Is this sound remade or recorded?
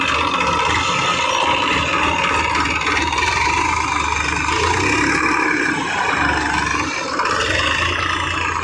recorded